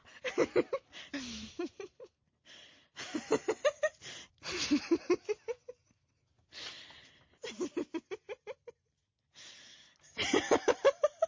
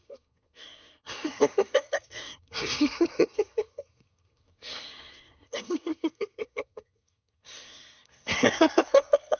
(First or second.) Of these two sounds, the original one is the first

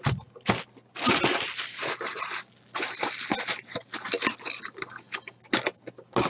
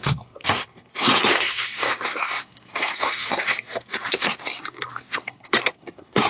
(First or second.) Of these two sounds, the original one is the first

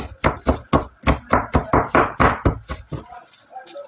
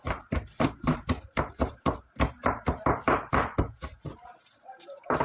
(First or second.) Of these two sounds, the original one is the first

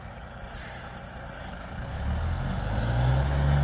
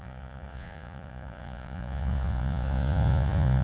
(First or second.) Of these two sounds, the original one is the first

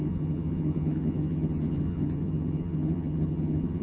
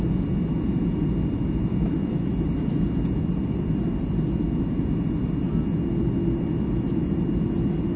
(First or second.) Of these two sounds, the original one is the second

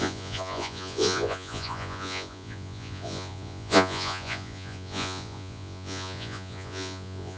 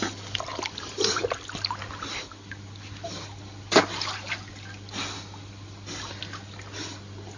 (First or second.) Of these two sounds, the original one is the second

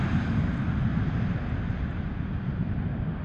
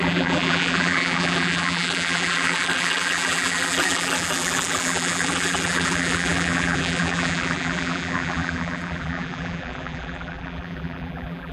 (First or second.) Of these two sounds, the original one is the first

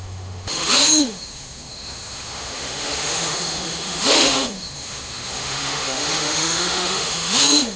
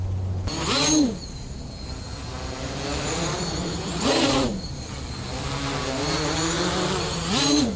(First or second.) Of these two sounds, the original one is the second